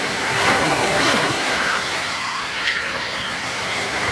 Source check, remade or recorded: remade